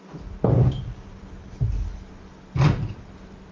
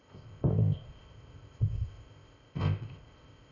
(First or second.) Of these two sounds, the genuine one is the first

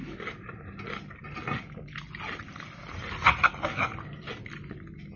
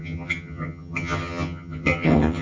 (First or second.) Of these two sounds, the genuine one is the first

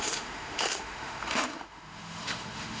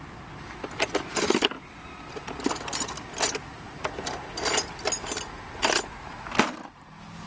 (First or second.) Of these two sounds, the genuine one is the second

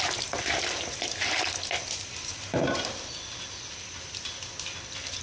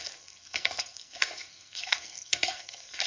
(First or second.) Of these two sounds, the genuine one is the first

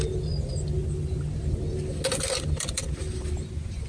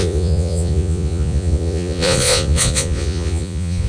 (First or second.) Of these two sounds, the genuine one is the first